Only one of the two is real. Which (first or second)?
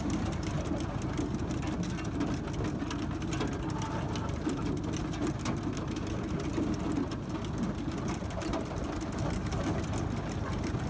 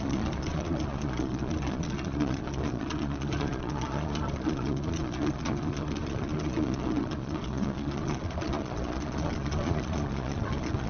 first